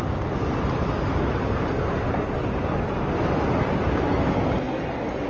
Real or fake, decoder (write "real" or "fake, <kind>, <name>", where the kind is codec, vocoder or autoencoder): real